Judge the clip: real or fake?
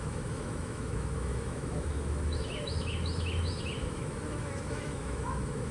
fake